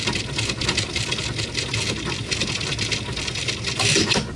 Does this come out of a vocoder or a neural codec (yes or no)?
yes